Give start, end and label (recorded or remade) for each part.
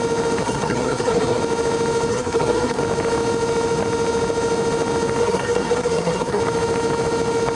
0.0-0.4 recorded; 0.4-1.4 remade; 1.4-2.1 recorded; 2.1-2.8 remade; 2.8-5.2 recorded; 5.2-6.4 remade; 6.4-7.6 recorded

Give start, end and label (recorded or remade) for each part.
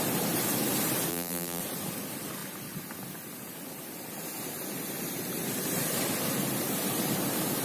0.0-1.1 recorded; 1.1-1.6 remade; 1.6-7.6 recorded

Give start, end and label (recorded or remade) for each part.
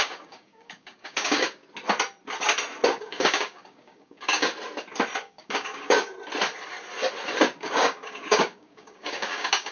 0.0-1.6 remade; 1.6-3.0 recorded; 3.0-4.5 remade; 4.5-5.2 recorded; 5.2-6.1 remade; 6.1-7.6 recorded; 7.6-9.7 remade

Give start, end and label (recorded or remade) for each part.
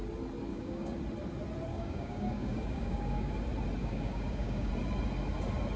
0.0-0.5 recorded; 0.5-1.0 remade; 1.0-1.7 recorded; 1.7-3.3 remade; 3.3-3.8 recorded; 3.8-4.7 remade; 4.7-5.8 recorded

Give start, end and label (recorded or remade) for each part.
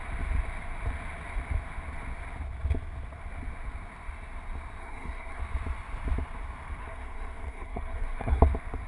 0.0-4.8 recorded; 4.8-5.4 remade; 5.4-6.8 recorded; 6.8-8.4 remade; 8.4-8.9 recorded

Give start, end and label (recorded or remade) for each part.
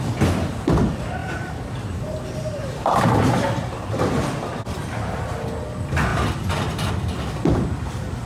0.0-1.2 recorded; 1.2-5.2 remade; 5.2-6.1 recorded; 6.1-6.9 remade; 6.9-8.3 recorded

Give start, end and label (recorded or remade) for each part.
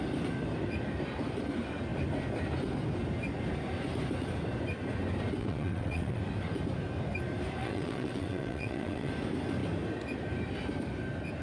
0.0-5.4 recorded; 5.4-6.2 remade; 6.2-7.6 recorded; 7.6-9.1 remade; 9.1-11.4 recorded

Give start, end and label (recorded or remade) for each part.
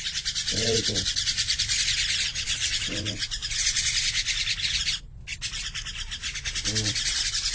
0.0-0.4 recorded; 0.4-1.6 remade; 1.6-2.3 recorded; 2.3-3.8 remade; 3.8-7.5 recorded